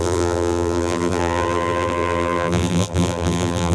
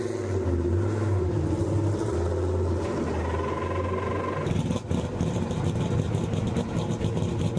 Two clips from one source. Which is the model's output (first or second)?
first